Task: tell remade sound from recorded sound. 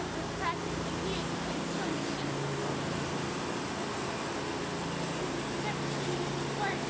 recorded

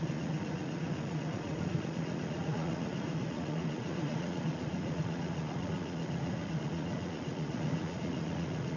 remade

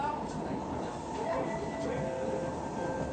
recorded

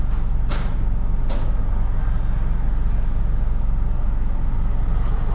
recorded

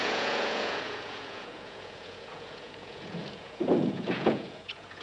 remade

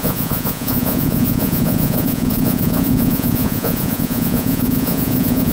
remade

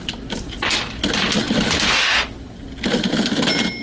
recorded